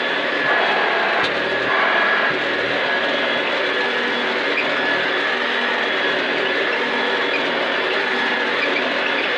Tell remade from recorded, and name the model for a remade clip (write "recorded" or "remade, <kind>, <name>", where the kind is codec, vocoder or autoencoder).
recorded